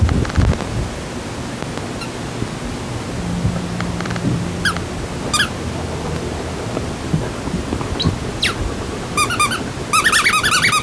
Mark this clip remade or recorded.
recorded